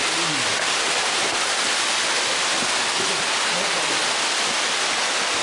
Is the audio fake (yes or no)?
no